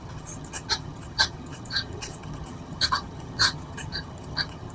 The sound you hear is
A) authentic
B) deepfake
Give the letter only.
B